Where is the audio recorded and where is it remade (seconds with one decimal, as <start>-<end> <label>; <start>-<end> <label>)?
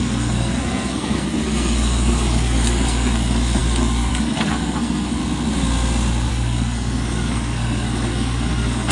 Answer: 0.0-5.2 remade; 5.2-6.3 recorded; 6.3-8.9 remade